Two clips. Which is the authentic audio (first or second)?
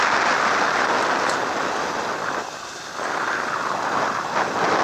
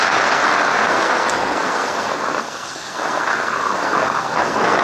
first